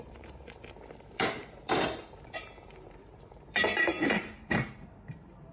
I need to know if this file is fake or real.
fake